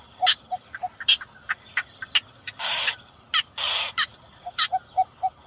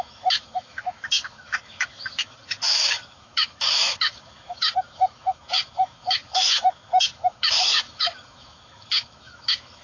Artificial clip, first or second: second